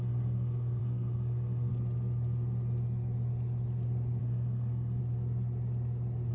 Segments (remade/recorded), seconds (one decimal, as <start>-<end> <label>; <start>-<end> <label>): 0.0-1.7 remade; 1.7-4.2 recorded; 4.2-5.0 remade; 5.0-6.3 recorded

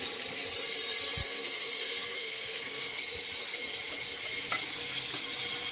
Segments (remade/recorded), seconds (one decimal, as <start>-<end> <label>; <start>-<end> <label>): 0.0-1.2 recorded; 1.2-3.0 remade; 3.0-5.7 recorded

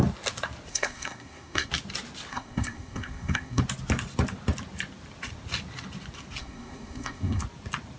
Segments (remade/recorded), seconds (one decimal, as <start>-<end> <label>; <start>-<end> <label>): 0.0-0.7 recorded; 0.7-1.7 remade; 1.7-2.3 recorded; 2.3-3.6 remade; 3.6-6.4 recorded; 6.4-7.4 remade; 7.4-8.0 recorded

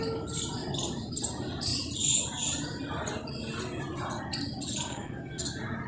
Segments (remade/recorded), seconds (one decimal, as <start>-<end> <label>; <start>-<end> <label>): 0.0-4.9 recorded; 4.9-5.5 remade; 5.5-5.9 recorded

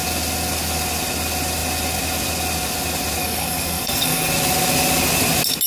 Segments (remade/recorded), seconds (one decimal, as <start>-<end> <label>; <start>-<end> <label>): 0.0-3.2 recorded; 3.2-4.3 remade; 4.3-5.7 recorded

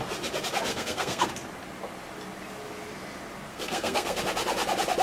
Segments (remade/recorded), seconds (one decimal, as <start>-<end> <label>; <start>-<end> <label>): 0.0-0.7 recorded; 0.7-1.3 remade; 1.3-3.5 recorded; 3.5-4.2 remade; 4.2-5.0 recorded

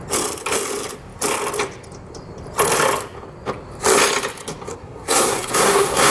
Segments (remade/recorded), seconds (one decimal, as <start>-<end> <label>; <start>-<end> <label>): 0.0-4.7 recorded; 4.7-6.1 remade

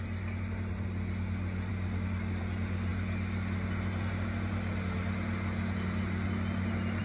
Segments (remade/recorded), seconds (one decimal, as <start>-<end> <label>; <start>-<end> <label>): 0.0-7.0 recorded